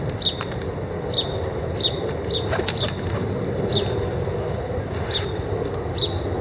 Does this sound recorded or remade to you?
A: recorded